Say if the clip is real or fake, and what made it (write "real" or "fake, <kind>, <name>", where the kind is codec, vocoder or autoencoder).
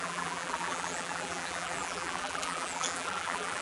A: fake, vocoder, BigVGAN v2